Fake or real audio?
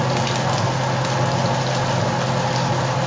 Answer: real